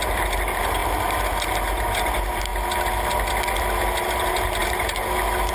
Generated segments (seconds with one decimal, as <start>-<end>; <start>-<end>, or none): none